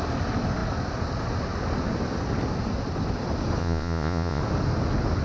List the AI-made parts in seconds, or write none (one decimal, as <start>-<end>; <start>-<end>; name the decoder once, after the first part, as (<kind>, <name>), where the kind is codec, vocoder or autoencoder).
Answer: 3.6-4.4 (vocoder, Vocos)